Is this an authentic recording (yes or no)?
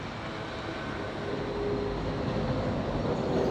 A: yes